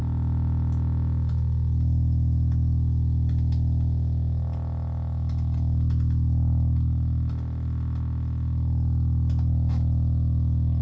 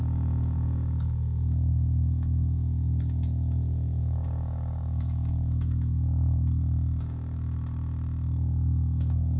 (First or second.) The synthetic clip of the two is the second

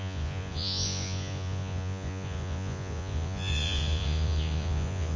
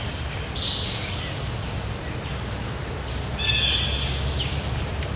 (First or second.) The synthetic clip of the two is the first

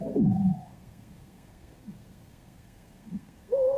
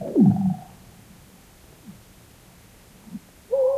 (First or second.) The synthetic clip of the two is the first